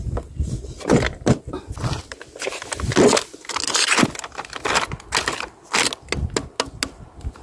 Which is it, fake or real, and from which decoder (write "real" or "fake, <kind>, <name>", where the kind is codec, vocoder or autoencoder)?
real